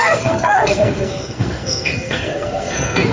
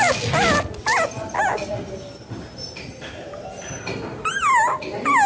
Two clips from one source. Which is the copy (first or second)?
first